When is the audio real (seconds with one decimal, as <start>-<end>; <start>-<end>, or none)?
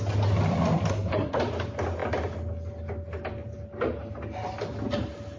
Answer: 0.0-0.9; 1.4-5.4